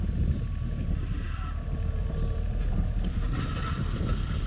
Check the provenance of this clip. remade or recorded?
remade